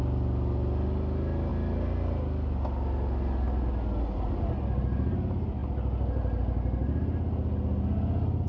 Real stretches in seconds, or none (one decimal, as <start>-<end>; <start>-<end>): 0.0-8.5